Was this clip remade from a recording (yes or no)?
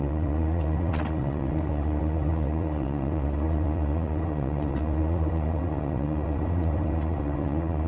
yes